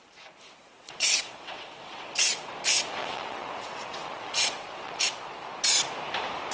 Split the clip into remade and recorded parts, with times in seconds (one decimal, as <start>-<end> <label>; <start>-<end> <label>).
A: 0.0-0.6 recorded; 0.6-2.5 remade; 2.5-3.0 recorded; 3.0-5.0 remade; 5.0-6.5 recorded